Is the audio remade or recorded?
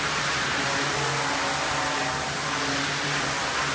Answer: recorded